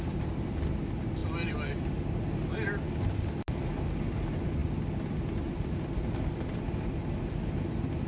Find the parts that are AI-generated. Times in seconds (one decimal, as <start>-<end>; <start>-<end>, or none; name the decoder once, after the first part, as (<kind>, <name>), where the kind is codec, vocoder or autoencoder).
none